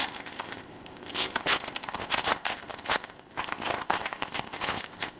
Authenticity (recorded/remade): remade